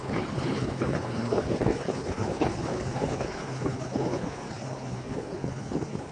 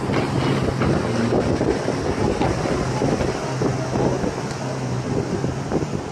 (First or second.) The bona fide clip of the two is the second